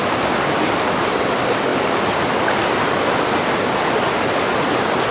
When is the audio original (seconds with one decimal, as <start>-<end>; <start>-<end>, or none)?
0.0-5.1